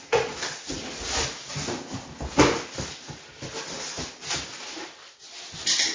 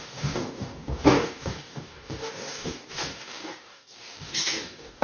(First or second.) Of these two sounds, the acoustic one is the first